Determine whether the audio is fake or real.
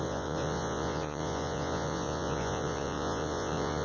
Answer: fake